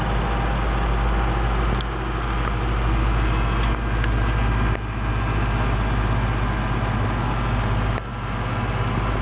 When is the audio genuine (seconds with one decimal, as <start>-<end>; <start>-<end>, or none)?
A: 0.0-9.2